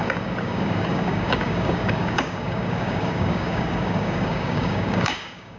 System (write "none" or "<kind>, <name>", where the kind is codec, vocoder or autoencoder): codec, DAC